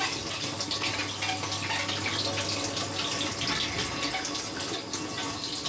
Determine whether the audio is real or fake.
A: real